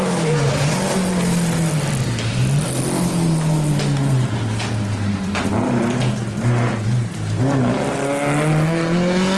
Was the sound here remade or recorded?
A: recorded